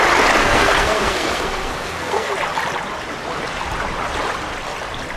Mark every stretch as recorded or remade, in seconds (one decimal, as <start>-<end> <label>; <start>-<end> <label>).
0.0-0.4 recorded; 0.4-2.3 remade; 2.3-5.2 recorded